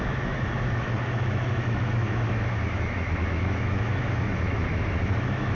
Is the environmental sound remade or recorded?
remade